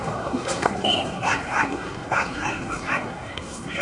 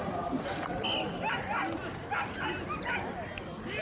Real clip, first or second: second